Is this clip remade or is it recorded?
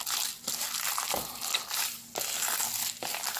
recorded